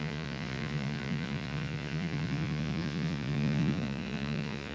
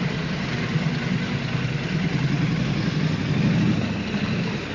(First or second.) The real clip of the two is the second